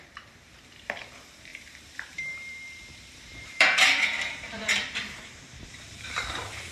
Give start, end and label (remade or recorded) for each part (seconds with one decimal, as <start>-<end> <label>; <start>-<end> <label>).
0.0-6.7 remade